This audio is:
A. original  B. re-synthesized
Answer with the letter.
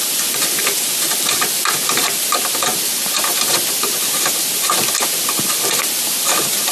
A